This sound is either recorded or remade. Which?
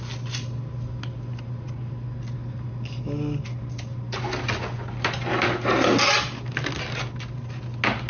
recorded